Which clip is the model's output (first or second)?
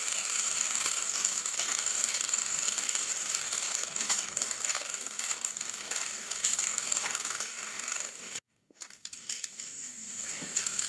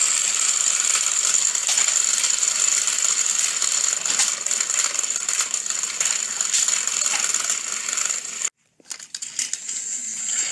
first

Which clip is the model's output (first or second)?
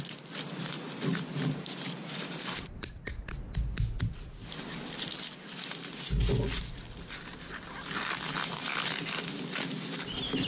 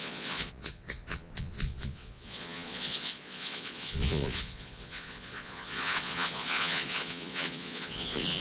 second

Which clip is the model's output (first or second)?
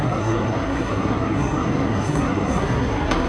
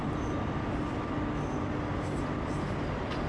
first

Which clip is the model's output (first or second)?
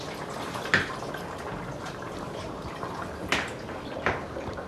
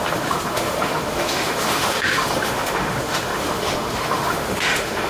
second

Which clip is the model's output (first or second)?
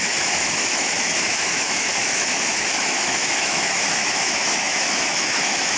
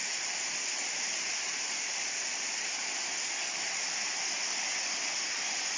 first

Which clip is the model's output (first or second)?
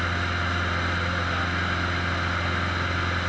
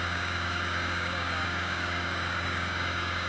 second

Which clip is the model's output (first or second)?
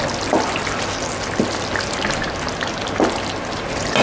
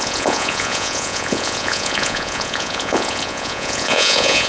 second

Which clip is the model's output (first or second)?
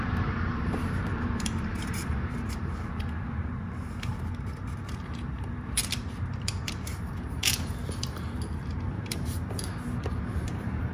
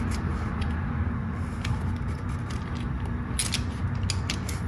first